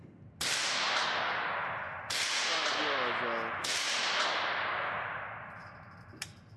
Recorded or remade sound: recorded